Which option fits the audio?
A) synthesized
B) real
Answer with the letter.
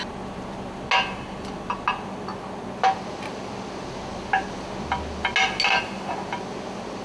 B